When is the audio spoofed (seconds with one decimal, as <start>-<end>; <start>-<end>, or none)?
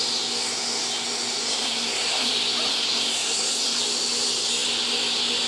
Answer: 1.4-2.3; 2.7-3.8